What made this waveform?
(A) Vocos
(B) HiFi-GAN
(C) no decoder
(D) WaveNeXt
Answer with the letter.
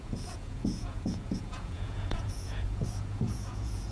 A